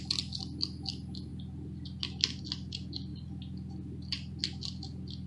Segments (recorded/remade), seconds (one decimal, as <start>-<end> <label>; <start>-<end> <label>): 0.0-5.3 recorded